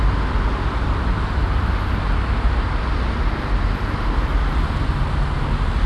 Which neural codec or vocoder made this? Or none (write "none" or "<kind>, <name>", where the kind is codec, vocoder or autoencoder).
none